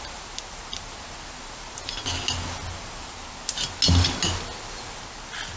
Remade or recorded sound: recorded